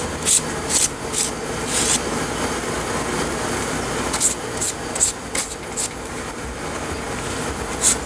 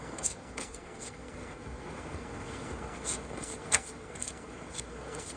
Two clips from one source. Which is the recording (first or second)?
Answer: first